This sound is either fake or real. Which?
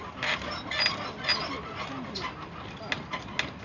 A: real